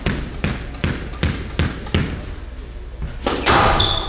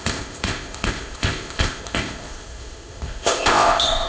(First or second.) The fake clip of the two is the second